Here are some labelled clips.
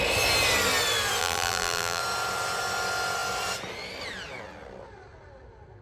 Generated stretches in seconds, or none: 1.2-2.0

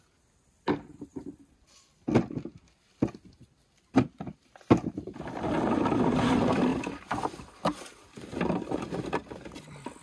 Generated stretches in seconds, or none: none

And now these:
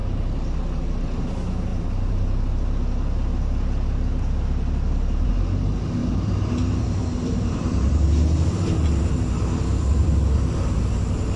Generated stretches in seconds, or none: 0.0-0.9; 1.7-5.3; 6.0-11.0